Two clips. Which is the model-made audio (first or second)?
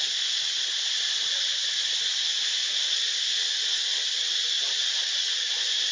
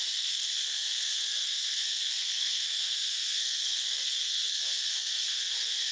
second